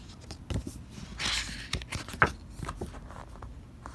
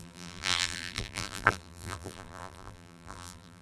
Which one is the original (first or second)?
first